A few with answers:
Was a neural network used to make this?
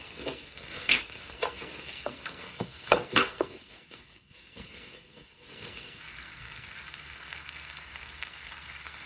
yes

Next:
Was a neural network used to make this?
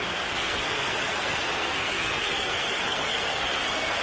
yes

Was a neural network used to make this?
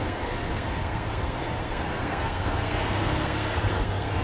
yes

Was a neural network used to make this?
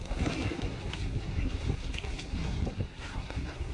yes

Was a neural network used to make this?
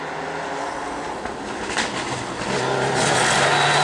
no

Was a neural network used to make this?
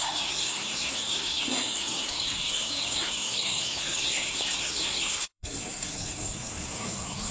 yes